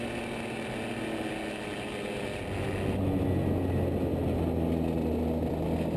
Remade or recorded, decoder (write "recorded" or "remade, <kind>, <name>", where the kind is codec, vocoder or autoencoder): recorded